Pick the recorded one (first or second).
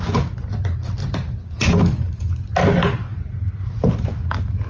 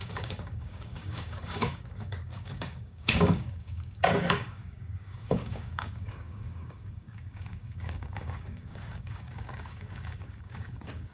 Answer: first